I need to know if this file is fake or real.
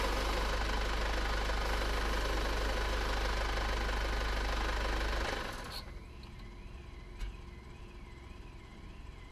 real